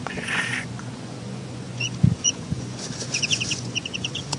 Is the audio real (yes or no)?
no